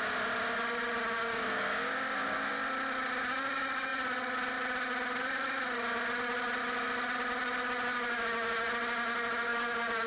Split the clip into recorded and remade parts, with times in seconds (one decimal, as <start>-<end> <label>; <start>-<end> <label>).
0.0-1.3 recorded; 1.3-2.5 remade; 2.5-10.1 recorded